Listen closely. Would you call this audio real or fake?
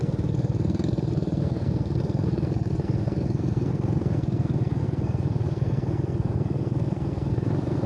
fake